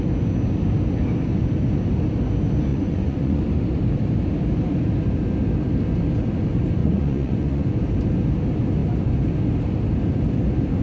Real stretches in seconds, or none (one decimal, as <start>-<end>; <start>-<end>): 0.0-2.7; 3.4-6.8; 7.8-10.8